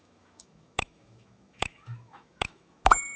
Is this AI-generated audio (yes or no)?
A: yes